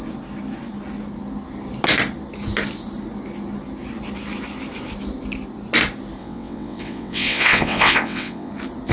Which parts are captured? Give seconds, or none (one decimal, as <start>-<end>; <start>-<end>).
0.0-6.2; 8.5-8.9